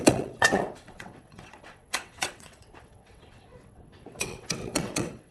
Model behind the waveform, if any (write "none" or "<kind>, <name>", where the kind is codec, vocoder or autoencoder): vocoder, WaveNeXt